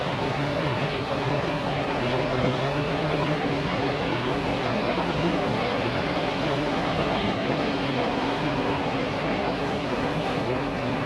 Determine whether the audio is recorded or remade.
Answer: remade